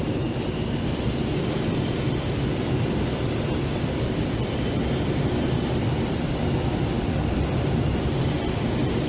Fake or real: fake